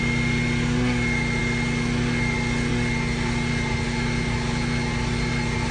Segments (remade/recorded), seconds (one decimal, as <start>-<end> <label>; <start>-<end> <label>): 0.0-5.7 recorded